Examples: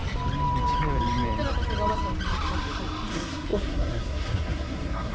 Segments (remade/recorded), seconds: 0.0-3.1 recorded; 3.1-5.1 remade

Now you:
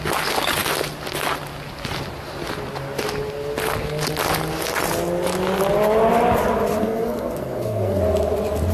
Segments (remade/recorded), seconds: 0.0-6.8 recorded; 6.8-8.0 remade; 8.0-8.7 recorded

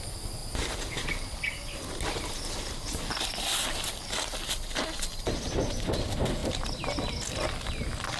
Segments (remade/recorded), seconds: 0.0-8.2 recorded

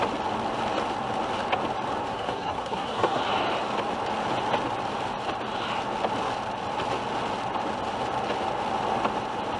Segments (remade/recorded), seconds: 0.0-2.1 recorded; 2.1-3.2 remade; 3.2-9.6 recorded

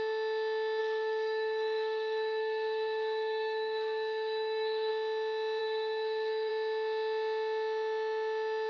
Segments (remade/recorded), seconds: 0.0-0.8 recorded; 0.8-4.9 remade; 4.9-5.6 recorded; 5.6-6.5 remade; 6.5-8.7 recorded

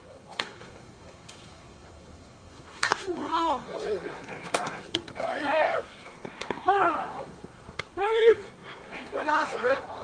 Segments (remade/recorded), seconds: 0.0-10.0 remade

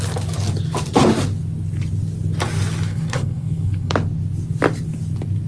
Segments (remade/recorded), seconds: 0.0-2.9 recorded; 2.9-3.9 remade; 3.9-5.5 recorded